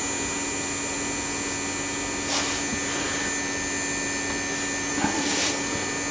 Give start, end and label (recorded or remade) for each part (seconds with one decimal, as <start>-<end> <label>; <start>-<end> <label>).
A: 0.0-6.1 recorded